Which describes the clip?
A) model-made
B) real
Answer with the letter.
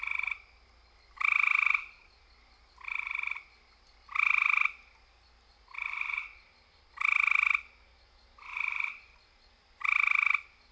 B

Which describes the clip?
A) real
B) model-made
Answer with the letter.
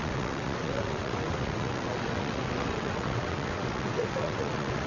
B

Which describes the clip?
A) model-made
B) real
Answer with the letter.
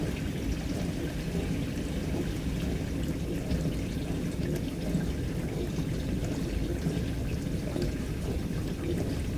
B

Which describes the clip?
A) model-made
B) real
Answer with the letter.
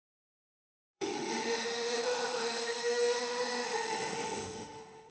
A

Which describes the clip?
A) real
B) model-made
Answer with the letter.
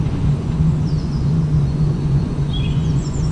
B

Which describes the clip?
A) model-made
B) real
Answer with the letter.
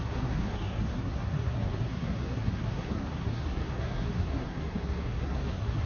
A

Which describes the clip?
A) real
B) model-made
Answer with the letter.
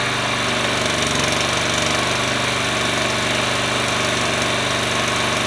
A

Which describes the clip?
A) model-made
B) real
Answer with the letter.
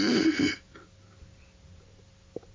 B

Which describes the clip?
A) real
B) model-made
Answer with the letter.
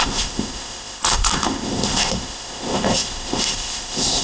B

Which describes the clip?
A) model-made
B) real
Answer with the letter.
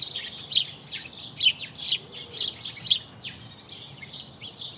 B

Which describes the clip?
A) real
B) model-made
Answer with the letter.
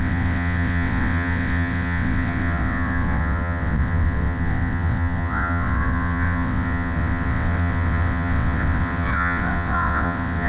B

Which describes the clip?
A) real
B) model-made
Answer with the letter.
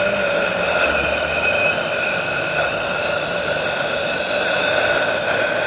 A